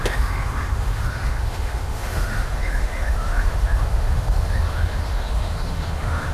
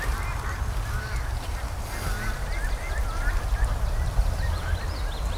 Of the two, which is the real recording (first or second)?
second